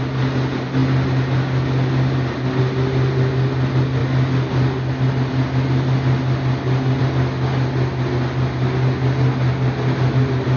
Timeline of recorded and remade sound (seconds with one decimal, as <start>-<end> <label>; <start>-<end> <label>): 0.0-10.6 recorded